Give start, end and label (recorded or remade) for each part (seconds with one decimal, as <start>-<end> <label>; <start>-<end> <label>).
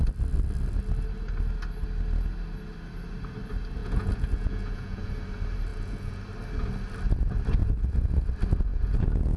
0.0-3.8 recorded; 3.8-5.1 remade; 5.1-5.7 recorded; 5.7-6.2 remade; 6.2-7.6 recorded; 7.6-8.1 remade; 8.1-8.7 recorded; 8.7-9.4 remade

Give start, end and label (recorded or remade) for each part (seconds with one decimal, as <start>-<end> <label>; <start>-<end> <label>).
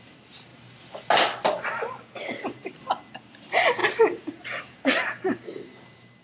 0.0-0.5 remade; 0.5-2.2 recorded; 2.2-6.2 remade